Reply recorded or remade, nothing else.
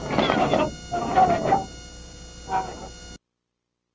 recorded